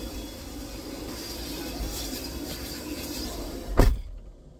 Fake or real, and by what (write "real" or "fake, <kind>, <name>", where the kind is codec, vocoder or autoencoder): fake, vocoder, BigVGAN v2